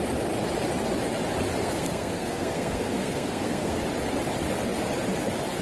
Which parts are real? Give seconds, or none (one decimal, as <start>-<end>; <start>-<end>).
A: 0.0-1.6; 3.8-5.6